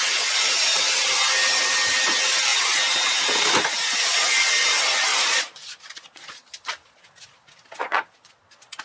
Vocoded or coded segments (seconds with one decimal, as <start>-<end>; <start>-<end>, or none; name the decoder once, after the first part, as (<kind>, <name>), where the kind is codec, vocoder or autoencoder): 5.1-7.1 (vocoder, Vocos); 7.8-8.3